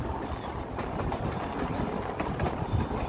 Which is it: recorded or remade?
recorded